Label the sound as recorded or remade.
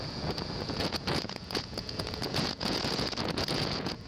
remade